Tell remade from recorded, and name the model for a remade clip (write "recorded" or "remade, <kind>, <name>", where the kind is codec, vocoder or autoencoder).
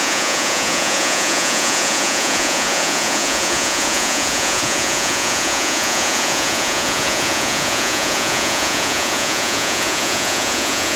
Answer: remade, vocoder, Vocos